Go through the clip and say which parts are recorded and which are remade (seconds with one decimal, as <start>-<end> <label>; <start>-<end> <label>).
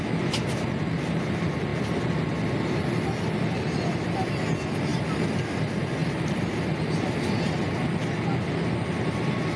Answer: 0.0-6.0 recorded; 6.0-6.8 remade; 6.8-9.6 recorded